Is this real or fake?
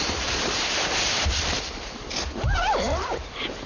fake